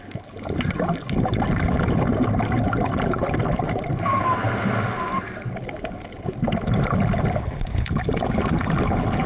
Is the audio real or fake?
real